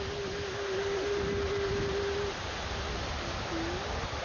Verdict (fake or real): real